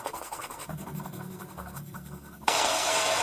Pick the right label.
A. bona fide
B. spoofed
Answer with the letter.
B